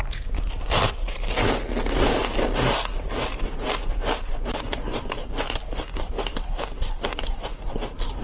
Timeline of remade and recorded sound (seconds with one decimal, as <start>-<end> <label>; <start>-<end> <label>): 0.0-3.3 recorded; 3.3-5.5 remade; 5.5-8.2 recorded